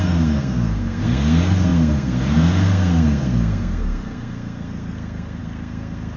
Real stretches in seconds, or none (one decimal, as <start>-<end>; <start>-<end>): none